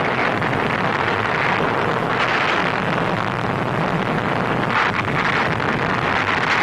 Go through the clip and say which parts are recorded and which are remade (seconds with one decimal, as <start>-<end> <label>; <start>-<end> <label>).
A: 0.0-6.6 recorded